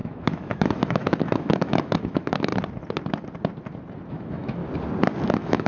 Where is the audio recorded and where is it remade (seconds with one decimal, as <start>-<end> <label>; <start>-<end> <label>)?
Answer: 0.0-2.5 remade; 2.5-4.1 recorded; 4.1-4.6 remade; 4.6-5.3 recorded; 5.3-5.7 remade